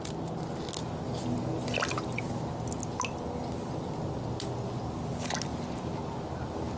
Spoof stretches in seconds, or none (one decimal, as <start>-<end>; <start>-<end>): none